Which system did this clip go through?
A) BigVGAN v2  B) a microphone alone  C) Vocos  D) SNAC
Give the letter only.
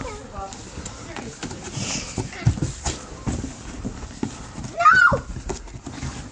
B